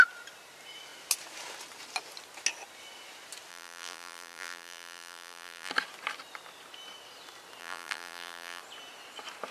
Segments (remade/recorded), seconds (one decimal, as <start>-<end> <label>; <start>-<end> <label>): 0.0-3.5 recorded; 3.5-5.7 remade; 5.7-7.6 recorded; 7.6-8.6 remade; 8.6-9.5 recorded